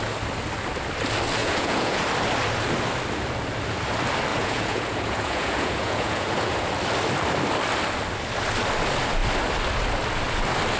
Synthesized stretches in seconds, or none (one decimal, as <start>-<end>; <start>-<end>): 1.4-2.0; 4.3-6.7